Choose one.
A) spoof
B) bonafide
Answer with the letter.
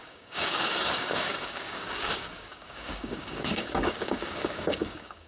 A